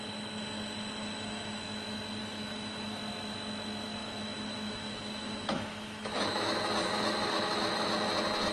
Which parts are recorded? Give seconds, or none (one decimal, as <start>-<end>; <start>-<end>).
0.0-1.0; 1.6-2.2; 3.0-4.0; 8.1-8.5